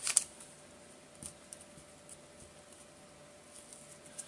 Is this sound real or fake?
real